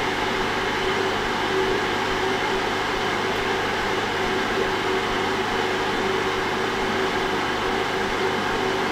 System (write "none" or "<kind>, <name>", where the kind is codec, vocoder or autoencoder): none